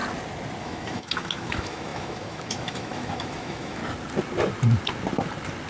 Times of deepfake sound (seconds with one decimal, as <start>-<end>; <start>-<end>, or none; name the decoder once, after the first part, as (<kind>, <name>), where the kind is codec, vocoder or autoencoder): 0.6-3.8 (autoencoder, DAC-VAE)